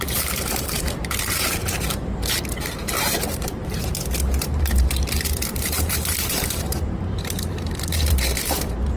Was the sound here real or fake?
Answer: fake